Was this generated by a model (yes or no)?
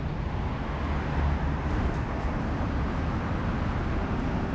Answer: no